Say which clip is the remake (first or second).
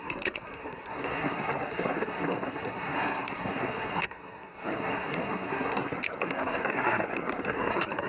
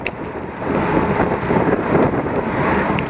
first